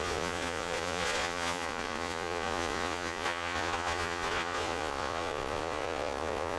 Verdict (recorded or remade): remade